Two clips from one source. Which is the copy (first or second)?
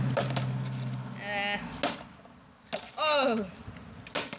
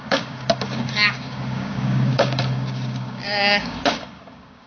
second